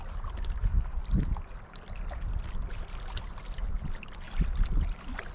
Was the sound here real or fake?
real